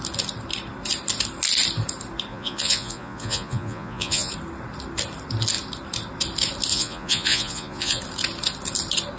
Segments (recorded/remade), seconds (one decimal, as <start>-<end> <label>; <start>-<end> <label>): 0.0-2.3 recorded; 2.3-4.3 remade; 4.3-6.7 recorded; 6.7-8.0 remade; 8.0-9.2 recorded